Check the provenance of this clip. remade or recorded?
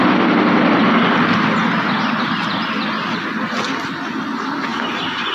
recorded